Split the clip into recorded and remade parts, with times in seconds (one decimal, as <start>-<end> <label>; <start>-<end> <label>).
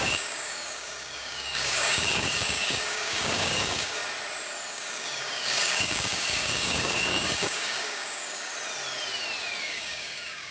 0.0-4.0 remade; 4.0-4.7 recorded; 4.7-8.5 remade; 8.5-9.6 recorded; 9.6-10.5 remade